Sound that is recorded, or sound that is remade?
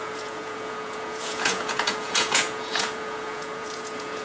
remade